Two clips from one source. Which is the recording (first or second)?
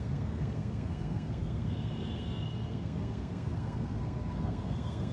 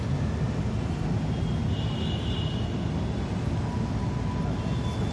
second